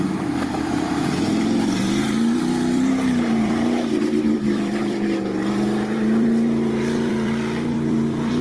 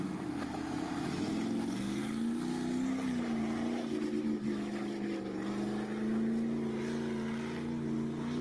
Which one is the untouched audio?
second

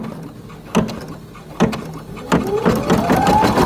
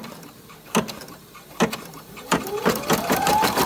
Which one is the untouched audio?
first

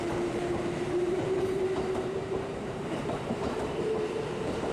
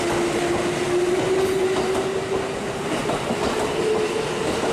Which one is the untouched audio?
second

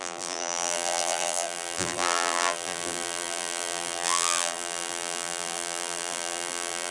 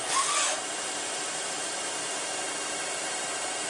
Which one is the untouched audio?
second